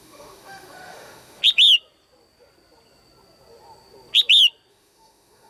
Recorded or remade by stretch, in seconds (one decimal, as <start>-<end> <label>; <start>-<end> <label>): 0.0-1.4 remade; 1.4-4.7 recorded; 4.7-5.5 remade